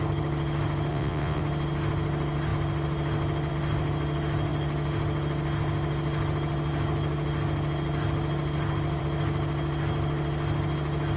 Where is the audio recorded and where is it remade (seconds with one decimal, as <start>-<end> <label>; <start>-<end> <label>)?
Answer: 0.0-0.9 recorded; 0.9-1.4 remade; 1.4-11.2 recorded